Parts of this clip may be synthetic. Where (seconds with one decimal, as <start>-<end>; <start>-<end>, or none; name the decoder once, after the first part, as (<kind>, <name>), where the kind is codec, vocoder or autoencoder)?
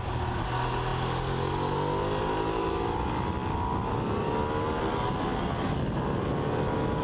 none